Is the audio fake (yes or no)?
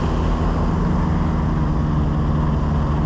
no